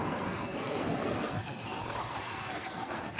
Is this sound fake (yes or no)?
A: yes